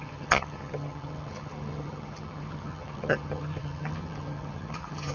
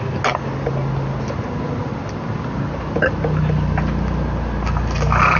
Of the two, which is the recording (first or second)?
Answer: second